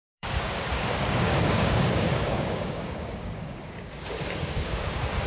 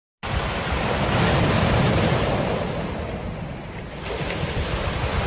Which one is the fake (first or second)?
first